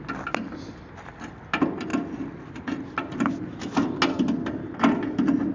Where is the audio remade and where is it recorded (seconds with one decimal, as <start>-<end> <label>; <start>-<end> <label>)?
0.0-5.5 recorded